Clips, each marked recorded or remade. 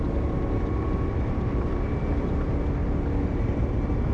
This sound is recorded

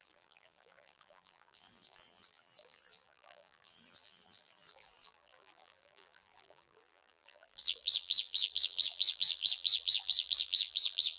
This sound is remade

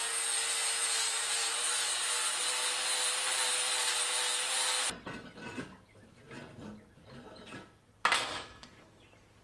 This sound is recorded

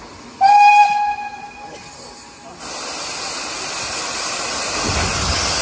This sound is recorded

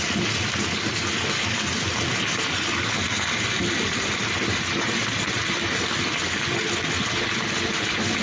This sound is recorded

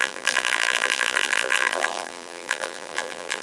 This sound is remade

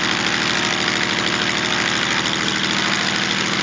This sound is recorded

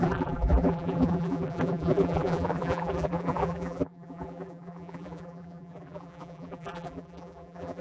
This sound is remade